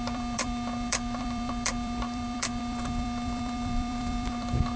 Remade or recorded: remade